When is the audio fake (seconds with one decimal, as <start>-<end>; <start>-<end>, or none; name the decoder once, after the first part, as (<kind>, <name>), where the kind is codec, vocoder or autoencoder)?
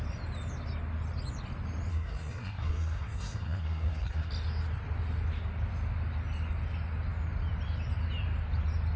1.9-4.3 (codec, SNAC)